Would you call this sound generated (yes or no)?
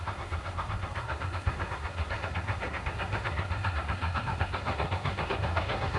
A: yes